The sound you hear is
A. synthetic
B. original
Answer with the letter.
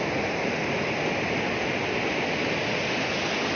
B